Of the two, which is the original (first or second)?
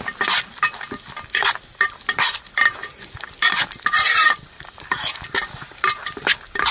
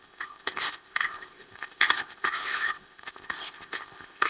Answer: first